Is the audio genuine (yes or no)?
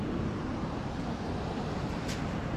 yes